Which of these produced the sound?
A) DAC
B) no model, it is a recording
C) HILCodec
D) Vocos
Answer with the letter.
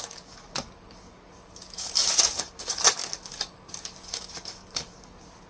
A